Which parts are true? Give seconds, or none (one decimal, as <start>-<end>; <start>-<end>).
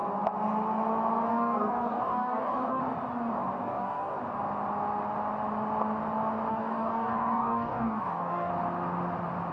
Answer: 0.0-1.3; 2.8-3.6; 4.2-6.5; 8.5-9.5